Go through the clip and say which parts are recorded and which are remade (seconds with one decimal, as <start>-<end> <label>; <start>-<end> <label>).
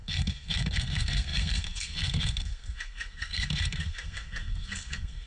0.0-5.3 remade